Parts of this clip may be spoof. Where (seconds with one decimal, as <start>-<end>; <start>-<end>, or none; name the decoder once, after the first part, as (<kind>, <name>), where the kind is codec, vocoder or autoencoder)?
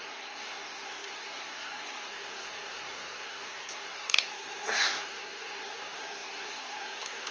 0.0-7.3 (codec, SNAC)